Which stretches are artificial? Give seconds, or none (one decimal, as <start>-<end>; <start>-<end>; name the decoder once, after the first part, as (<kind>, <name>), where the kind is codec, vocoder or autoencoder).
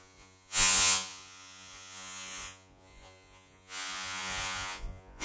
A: 0.0-5.2 (vocoder, Vocos)